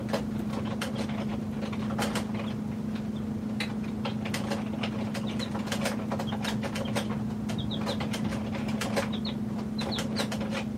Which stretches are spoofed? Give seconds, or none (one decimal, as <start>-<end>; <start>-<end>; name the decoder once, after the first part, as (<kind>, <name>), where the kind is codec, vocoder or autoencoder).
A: none

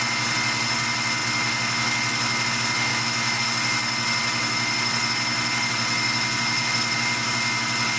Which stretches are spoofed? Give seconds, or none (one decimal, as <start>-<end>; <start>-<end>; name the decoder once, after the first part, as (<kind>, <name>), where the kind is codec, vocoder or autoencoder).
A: 2.9-3.4 (autoencoder, DAC-VAE)